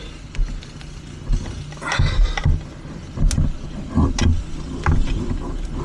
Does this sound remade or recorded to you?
recorded